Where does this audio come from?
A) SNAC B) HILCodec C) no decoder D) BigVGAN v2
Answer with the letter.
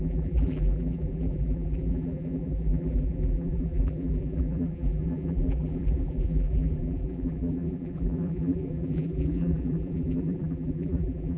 D